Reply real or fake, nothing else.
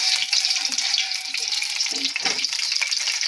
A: fake